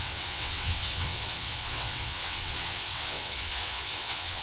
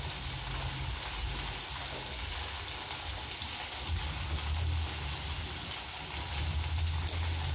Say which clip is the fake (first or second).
first